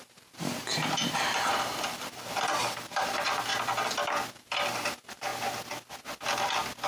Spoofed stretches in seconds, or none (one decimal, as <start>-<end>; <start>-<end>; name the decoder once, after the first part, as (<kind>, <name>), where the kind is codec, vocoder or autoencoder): 0.0-3.5 (vocoder, BigVGAN v2); 4.3-5.3